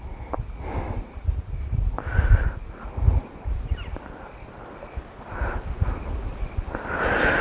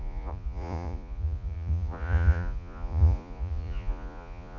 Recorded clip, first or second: first